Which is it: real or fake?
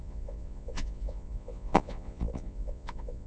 fake